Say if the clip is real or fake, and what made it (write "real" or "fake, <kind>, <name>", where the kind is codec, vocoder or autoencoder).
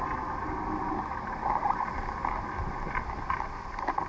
real